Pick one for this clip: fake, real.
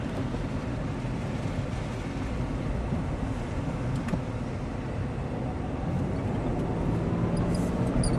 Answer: real